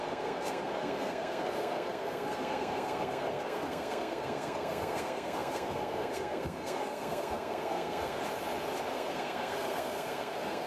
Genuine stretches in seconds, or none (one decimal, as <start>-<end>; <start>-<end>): 8.2-8.9